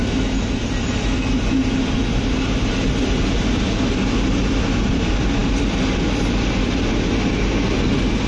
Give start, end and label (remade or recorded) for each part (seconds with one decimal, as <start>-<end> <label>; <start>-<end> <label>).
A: 0.0-8.3 recorded